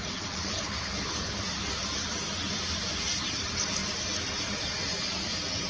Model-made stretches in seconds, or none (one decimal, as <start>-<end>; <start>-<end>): 0.4-1.4